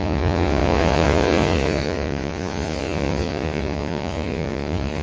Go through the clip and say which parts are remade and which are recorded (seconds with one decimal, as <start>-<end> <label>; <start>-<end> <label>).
0.0-5.0 remade